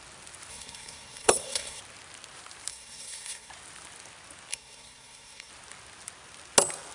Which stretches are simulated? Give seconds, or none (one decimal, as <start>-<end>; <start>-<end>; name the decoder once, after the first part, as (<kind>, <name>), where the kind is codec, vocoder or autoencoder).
0.5-1.8 (codec, SNAC); 2.7-3.5; 4.5-5.5